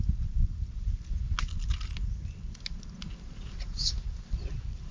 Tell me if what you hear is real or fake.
real